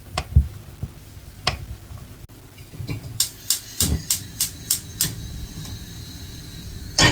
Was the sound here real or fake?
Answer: real